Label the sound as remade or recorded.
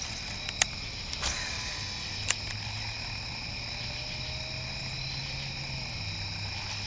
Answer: recorded